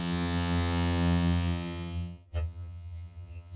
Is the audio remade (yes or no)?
yes